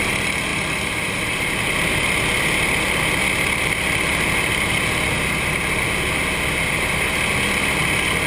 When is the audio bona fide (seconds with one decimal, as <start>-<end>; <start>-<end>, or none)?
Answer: 0.0-8.3